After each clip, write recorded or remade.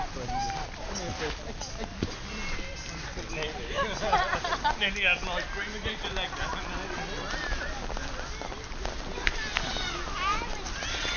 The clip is recorded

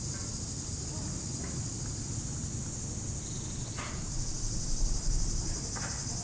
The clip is recorded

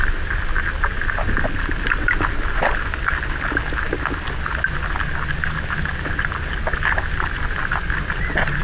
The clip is recorded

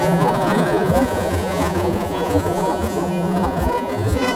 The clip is remade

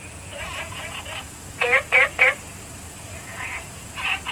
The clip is remade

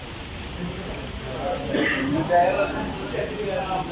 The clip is recorded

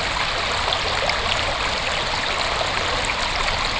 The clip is recorded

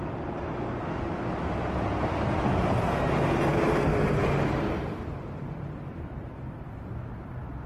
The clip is recorded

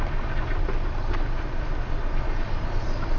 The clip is recorded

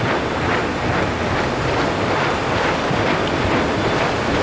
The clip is recorded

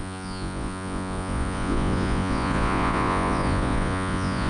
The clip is remade